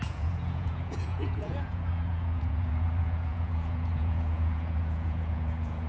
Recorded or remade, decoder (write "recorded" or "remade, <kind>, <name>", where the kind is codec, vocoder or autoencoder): remade, vocoder, Vocos